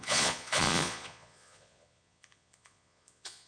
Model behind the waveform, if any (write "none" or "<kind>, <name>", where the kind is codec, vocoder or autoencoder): vocoder, Vocos